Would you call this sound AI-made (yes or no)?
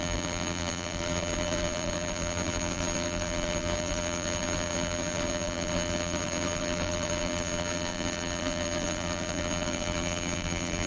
yes